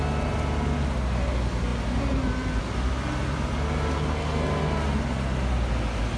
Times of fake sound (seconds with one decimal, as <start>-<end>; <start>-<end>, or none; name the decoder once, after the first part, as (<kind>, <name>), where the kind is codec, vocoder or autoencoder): none